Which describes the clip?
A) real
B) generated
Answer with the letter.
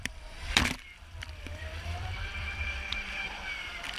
B